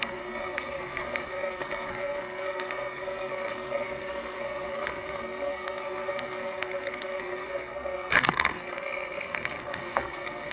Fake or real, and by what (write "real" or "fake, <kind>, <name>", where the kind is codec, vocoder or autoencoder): fake, codec, SNAC